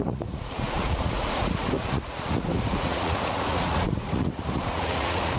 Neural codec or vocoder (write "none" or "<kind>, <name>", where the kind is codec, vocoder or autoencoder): vocoder, Vocos